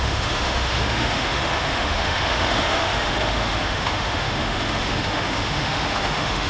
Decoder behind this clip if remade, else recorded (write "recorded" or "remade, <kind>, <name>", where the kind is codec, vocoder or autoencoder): remade, autoencoder, DAC-VAE